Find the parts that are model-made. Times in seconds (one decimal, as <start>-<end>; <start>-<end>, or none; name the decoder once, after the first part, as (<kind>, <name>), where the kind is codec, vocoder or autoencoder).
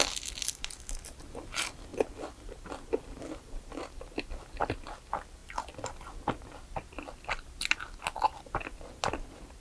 none